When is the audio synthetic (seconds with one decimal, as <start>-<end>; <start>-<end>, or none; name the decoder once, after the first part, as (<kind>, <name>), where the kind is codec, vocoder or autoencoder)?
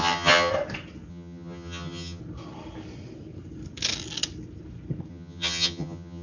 0.0-0.5 (vocoder, HiFi-GAN); 1.1-2.2; 5.1-6.2